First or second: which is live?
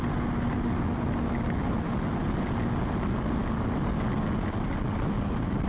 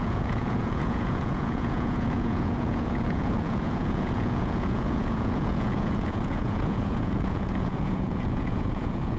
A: first